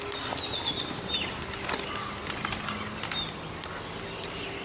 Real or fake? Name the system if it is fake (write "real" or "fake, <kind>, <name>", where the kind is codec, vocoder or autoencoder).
real